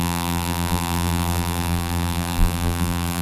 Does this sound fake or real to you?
fake